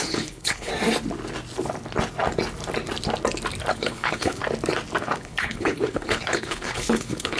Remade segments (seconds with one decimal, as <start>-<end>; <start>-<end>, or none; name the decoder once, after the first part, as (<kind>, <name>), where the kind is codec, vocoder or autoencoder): 0.0-0.7 (codec, HILCodec); 3.7-4.4; 5.0-7.4